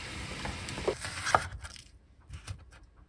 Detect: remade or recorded recorded